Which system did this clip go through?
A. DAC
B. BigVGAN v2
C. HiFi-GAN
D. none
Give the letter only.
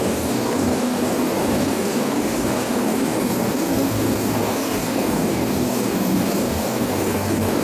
A